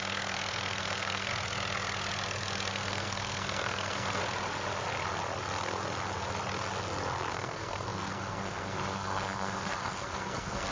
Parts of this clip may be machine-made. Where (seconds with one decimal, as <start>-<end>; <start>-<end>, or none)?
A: 0.0-1.3; 2.7-4.2; 7.3-10.7